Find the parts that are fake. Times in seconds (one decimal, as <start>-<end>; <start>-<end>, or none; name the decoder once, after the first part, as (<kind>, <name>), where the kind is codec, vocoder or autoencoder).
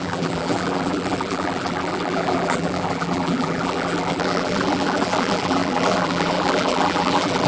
0.0-7.5 (vocoder, BigVGAN v2)